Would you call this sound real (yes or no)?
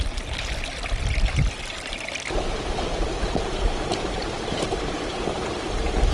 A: yes